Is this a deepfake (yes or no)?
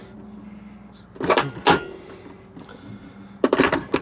no